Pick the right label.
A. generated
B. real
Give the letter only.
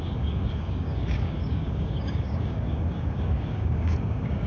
A